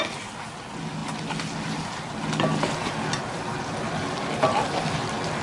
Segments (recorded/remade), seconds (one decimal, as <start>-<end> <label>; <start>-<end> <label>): 0.0-5.4 recorded